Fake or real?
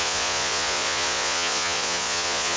fake